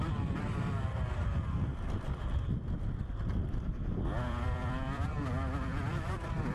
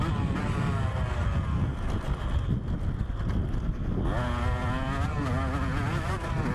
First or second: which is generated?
first